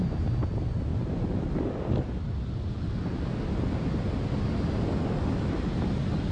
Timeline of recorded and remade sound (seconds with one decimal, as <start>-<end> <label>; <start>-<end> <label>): 0.0-6.3 recorded